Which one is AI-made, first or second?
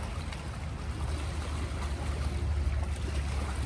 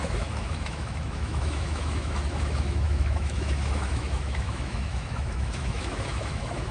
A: second